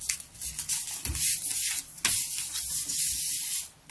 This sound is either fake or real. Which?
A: real